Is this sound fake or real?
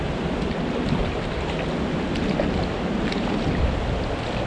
real